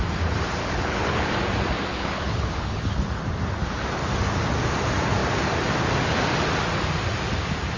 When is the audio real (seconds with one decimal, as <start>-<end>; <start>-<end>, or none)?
0.0-0.6; 1.3-1.9; 3.0-7.8